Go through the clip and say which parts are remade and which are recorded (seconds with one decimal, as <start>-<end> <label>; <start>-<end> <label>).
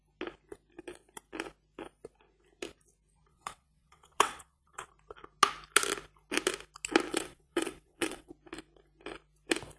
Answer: 0.0-3.3 recorded; 3.3-4.9 remade; 4.9-7.1 recorded; 7.1-8.3 remade; 8.3-9.8 recorded